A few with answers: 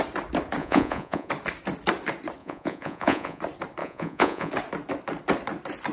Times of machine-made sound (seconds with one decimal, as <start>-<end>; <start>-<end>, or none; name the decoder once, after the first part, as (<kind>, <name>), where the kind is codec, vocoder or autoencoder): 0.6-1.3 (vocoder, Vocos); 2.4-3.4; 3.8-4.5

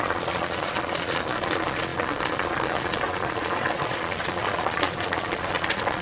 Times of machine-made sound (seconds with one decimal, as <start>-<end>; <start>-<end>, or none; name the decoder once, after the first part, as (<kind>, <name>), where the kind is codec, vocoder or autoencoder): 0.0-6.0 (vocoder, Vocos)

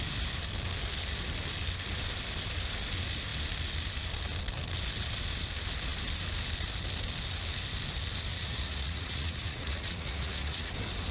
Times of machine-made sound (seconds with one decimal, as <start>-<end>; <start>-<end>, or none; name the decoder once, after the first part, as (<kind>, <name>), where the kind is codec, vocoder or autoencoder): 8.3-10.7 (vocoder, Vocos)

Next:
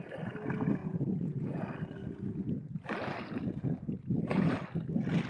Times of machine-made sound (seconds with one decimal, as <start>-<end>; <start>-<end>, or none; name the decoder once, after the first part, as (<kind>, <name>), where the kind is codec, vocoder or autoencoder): 0.8-1.6 (vocoder, Vocos)

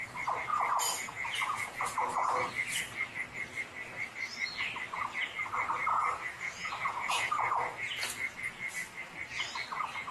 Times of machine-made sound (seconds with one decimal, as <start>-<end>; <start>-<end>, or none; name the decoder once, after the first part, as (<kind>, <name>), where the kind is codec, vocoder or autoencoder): 0.5-2.5 (vocoder, Vocos); 5.9-8.7

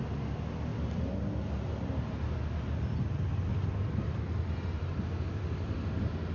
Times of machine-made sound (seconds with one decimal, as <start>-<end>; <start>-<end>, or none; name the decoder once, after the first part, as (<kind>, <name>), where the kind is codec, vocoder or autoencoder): none

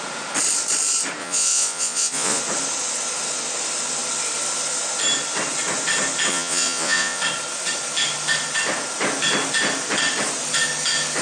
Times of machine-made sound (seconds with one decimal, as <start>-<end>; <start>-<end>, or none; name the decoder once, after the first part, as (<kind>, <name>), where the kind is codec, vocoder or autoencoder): 1.2-2.4 (vocoder, Vocos); 6.3-7.2